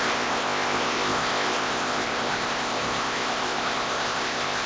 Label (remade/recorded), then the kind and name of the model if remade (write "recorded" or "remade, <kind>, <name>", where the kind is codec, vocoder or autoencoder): remade, codec, ZipCodec